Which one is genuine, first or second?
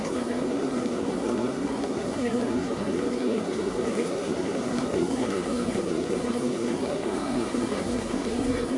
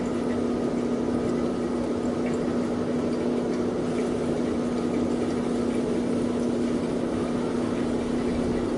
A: second